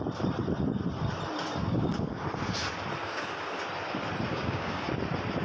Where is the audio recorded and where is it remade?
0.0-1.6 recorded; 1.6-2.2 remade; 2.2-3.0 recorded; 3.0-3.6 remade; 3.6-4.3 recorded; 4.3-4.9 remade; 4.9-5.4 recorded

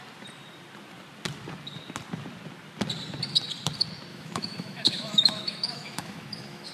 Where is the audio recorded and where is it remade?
0.0-4.1 recorded; 4.1-6.7 remade

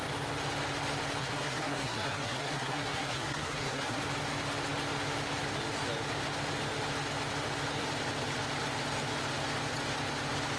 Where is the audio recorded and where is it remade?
0.0-1.2 recorded; 1.2-4.0 remade; 4.0-10.6 recorded